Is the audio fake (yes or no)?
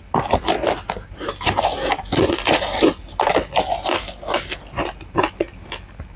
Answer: no